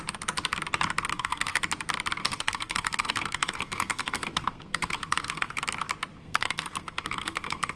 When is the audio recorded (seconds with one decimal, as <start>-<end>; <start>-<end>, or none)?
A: 0.0-1.1; 1.6-2.2; 5.6-6.2